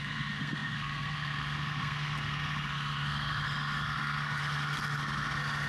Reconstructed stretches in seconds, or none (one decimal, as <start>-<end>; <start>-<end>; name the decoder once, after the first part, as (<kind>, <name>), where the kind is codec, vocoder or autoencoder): 0.0-5.7 (codec, SNAC)

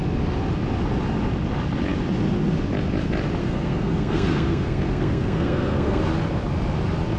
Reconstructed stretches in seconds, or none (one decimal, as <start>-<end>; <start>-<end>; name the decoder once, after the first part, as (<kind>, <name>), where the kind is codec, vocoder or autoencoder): 3.4-6.0 (codec, SNAC)